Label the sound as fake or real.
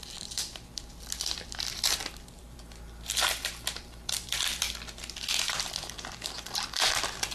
fake